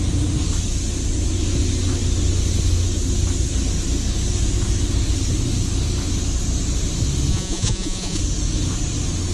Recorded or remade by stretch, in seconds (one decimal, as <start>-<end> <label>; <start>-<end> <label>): 0.0-7.3 recorded; 7.3-8.2 remade; 8.2-9.3 recorded